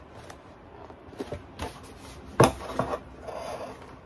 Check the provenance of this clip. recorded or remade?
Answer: recorded